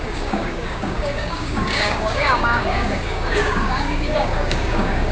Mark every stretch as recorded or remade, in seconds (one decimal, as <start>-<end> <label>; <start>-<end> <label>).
0.0-5.1 remade

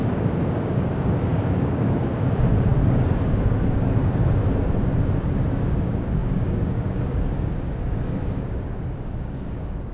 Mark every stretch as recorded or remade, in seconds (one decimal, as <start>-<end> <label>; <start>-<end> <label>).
0.0-4.4 remade; 4.4-5.5 recorded; 5.5-9.9 remade

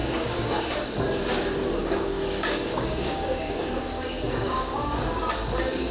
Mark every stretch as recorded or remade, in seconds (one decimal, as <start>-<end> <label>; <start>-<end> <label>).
0.0-0.7 remade; 0.7-1.8 recorded; 1.8-5.3 remade; 5.3-5.9 recorded

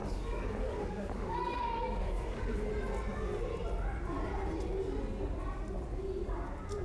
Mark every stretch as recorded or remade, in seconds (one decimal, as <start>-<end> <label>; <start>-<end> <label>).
0.0-2.7 remade; 2.7-6.8 recorded

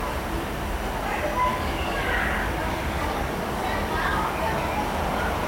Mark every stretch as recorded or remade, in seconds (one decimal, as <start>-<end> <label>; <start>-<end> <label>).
0.0-1.5 recorded; 1.5-3.6 remade; 3.6-4.1 recorded; 4.1-5.0 remade; 5.0-5.5 recorded

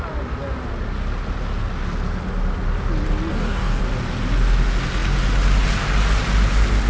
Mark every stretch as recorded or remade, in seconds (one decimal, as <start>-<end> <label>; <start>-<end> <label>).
0.0-3.3 recorded; 3.3-3.8 remade; 3.8-6.9 recorded

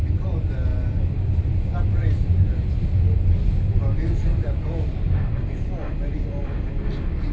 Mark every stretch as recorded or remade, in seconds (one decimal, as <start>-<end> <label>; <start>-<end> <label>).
0.0-7.3 recorded